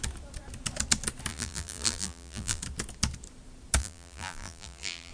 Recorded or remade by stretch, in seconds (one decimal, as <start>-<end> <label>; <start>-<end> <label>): 0.0-1.3 recorded; 1.3-2.6 remade; 2.6-3.8 recorded; 3.8-5.1 remade